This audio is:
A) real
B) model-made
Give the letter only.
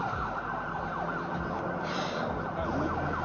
A